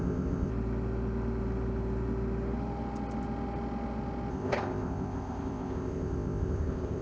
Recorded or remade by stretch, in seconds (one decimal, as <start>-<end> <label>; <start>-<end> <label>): 0.0-0.5 remade; 0.5-4.3 recorded; 4.3-7.0 remade